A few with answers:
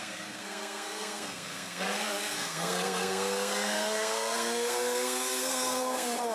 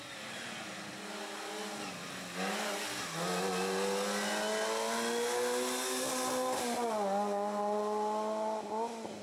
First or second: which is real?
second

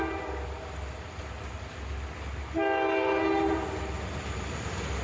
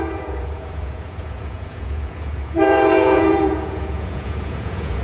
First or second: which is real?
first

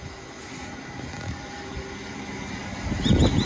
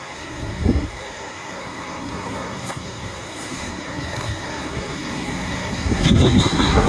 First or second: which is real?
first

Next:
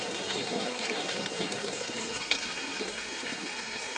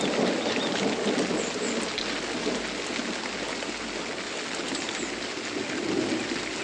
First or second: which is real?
second